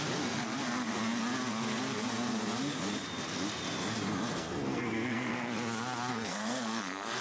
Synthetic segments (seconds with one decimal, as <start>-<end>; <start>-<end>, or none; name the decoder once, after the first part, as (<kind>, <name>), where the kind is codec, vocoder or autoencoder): 4.3-5.5 (codec, SNAC); 6.1-7.2